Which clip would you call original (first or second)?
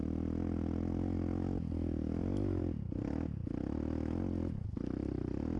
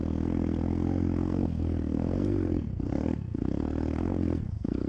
first